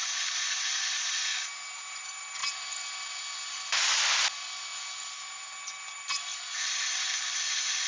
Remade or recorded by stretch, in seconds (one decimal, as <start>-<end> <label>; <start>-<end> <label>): 0.0-7.9 recorded